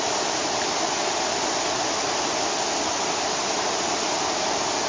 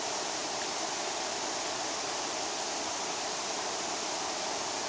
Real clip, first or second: first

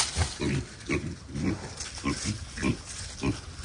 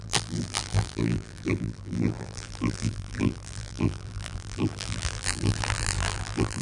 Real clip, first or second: first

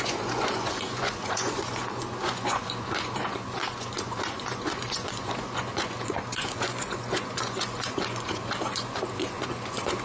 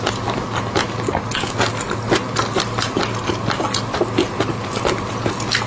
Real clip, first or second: second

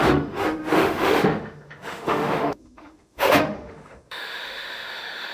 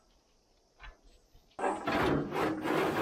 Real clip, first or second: second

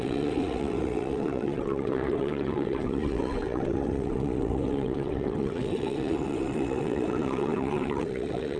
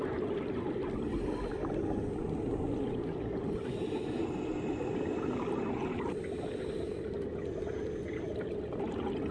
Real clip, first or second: second